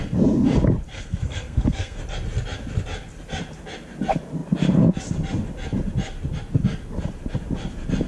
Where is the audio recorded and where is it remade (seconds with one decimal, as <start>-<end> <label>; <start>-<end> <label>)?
0.0-0.9 recorded; 0.9-2.0 remade; 2.0-8.1 recorded